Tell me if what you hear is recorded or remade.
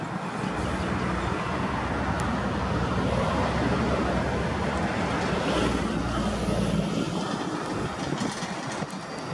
recorded